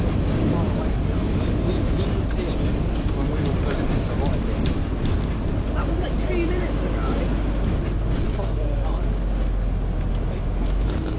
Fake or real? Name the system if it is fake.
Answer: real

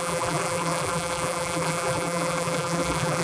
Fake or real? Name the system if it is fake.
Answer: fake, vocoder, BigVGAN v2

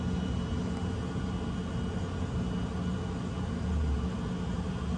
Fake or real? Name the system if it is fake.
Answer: real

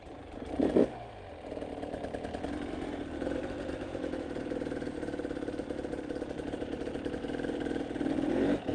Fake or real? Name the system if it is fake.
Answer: fake, vocoder, BigVGAN v2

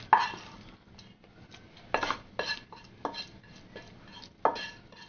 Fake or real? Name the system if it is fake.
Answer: real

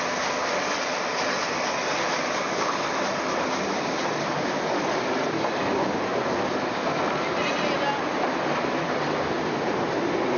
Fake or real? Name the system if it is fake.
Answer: real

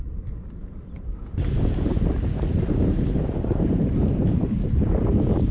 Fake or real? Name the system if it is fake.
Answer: fake, vocoder, BigVGAN v2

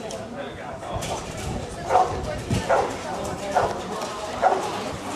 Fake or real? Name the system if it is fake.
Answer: fake, vocoder, BigVGAN v2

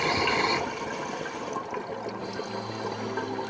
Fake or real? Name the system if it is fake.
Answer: real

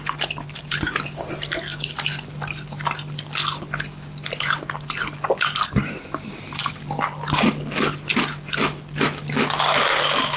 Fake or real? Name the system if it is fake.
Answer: fake, vocoder, BigVGAN v2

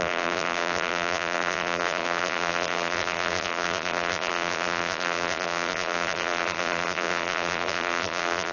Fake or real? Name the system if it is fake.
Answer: fake, vocoder, BigVGAN v2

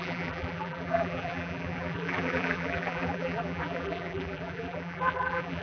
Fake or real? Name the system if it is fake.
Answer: fake, vocoder, BigVGAN v2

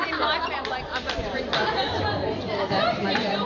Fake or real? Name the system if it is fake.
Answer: fake, vocoder, BigVGAN v2